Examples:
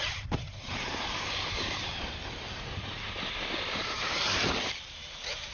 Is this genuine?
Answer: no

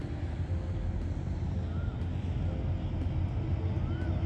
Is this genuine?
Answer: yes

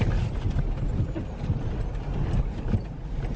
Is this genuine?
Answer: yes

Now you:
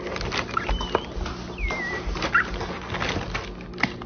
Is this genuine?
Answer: yes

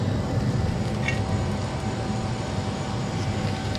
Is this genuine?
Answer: yes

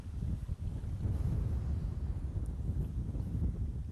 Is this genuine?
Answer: yes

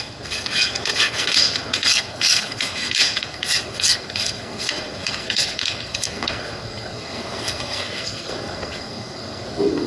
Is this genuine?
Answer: no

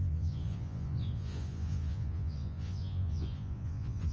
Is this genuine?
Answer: no